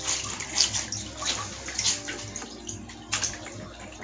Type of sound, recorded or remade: recorded